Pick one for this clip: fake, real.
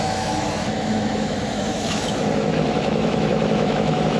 fake